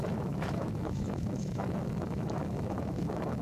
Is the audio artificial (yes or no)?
yes